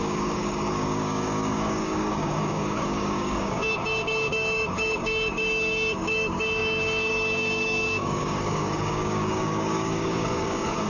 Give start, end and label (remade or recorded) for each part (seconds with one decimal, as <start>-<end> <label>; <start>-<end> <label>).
0.0-10.9 remade